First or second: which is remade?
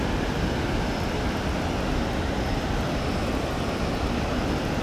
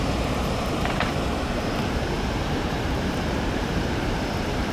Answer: second